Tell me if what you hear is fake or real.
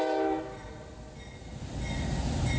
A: real